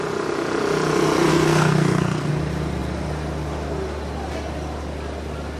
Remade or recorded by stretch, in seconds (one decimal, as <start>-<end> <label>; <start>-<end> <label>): 0.0-1.3 recorded; 1.3-2.3 remade; 2.3-5.6 recorded